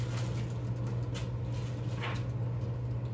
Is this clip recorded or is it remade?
recorded